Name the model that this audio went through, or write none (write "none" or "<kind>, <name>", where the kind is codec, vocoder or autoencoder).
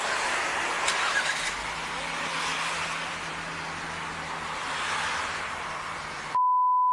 none